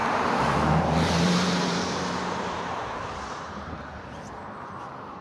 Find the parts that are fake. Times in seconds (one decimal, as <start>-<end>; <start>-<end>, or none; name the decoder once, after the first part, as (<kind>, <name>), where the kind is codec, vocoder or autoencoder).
0.0-5.2 (vocoder, BigVGAN v2)